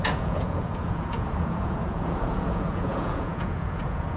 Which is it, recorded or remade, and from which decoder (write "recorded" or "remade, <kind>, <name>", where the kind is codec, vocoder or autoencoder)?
remade, vocoder, Vocos